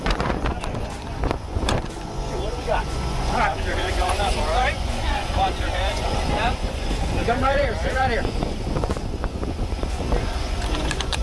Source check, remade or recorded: remade